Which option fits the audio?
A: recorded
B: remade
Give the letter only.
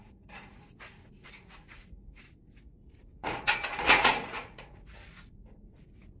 B